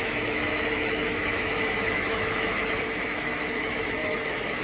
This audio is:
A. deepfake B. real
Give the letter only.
A